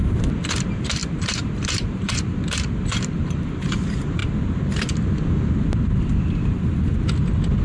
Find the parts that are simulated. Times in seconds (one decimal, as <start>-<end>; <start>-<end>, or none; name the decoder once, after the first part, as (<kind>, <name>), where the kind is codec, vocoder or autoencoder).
0.0-4.2 (vocoder, BigVGAN v2)

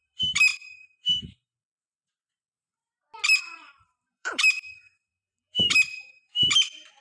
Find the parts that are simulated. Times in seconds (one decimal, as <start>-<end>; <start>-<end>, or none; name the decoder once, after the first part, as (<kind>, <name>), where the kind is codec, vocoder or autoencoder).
0.0-2.8 (vocoder, BigVGAN v2); 3.4-7.0

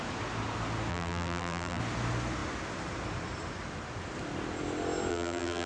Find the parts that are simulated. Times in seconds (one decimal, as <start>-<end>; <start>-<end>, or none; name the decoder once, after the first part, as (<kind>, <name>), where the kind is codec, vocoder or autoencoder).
0.9-1.8 (vocoder, BigVGAN v2); 5.1-5.7

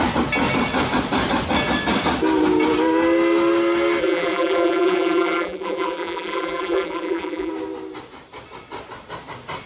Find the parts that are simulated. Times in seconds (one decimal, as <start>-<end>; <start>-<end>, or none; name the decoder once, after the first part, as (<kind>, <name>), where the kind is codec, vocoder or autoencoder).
4.0-7.5 (vocoder, BigVGAN v2)

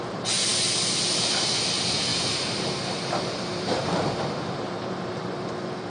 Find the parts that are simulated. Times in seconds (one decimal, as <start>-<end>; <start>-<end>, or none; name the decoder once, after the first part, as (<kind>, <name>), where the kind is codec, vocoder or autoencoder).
2.1-5.9 (vocoder, BigVGAN v2)